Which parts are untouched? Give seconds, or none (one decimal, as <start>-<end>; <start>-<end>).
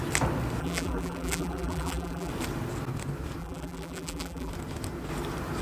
0.0-0.6; 2.3-3.4; 4.5-5.6